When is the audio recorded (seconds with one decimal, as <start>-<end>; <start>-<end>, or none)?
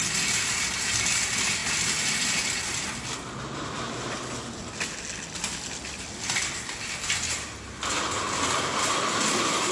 0.0-9.7